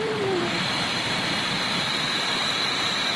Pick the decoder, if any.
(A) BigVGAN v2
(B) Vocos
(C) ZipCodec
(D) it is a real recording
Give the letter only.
A